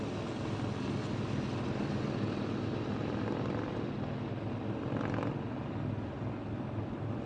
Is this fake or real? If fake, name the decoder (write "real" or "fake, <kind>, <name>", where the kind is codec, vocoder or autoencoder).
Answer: real